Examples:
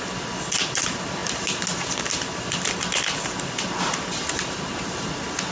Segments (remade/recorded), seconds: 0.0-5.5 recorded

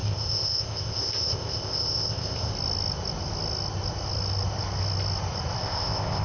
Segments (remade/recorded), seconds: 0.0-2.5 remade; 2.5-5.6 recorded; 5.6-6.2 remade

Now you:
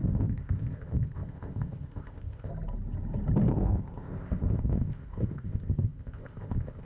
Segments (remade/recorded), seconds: 0.0-2.5 remade; 2.5-3.5 recorded; 3.5-6.8 remade